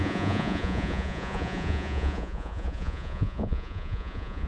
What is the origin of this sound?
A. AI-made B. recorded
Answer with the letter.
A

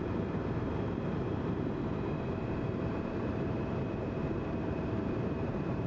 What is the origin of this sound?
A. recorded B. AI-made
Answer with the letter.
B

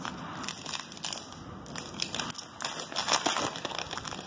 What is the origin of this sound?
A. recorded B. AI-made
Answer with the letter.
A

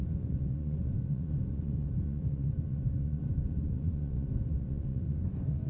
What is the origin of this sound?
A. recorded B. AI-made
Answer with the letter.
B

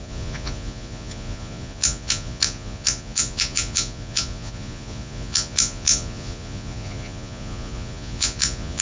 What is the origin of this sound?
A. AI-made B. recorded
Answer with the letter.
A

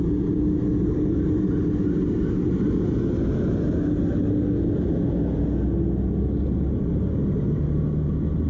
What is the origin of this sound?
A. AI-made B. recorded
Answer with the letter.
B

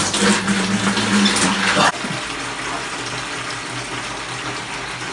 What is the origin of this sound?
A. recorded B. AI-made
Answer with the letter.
A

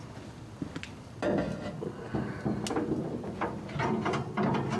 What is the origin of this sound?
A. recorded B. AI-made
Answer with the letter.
A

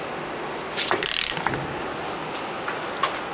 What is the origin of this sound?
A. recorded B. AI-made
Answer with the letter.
A